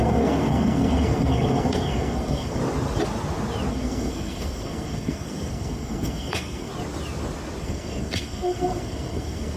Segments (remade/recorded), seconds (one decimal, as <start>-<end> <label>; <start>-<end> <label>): 0.0-2.6 remade; 2.6-3.7 recorded; 3.7-6.7 remade; 6.7-7.6 recorded; 7.6-9.6 remade